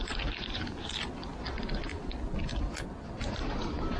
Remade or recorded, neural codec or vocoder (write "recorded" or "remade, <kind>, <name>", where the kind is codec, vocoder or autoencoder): recorded